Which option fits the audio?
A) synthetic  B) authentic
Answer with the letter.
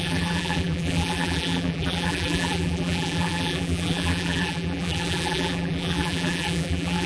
A